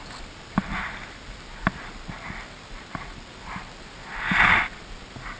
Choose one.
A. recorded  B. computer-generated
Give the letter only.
A